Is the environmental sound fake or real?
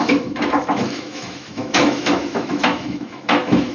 fake